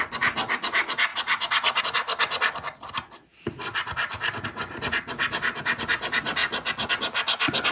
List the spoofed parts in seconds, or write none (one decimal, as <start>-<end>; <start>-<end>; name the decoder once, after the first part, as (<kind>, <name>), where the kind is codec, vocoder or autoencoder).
none